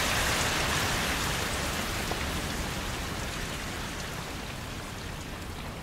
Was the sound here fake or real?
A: real